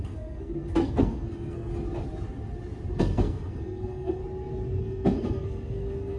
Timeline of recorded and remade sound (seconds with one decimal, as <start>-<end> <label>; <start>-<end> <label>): 0.0-1.7 remade; 1.7-3.0 recorded; 3.0-4.2 remade; 4.2-4.8 recorded; 4.8-6.2 remade